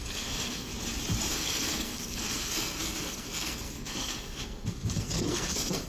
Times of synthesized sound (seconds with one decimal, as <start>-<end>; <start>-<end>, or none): 0.0-0.7; 1.3-5.9